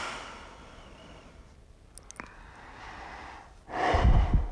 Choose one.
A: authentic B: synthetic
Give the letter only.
A